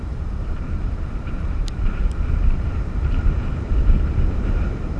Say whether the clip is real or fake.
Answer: fake